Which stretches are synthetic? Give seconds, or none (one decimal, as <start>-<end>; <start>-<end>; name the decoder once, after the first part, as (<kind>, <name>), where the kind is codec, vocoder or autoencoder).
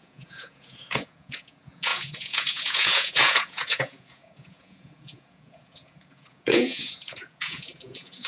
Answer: 0.0-8.3 (vocoder, Vocos)